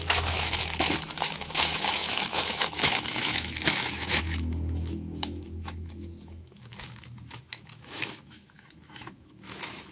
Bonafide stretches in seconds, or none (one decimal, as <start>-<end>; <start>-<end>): none